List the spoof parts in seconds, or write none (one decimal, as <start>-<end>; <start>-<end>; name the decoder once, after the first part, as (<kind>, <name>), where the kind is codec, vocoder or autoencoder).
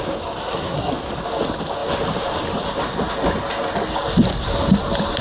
0.4-0.9 (codec, SNAC)